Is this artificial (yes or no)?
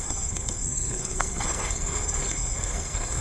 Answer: yes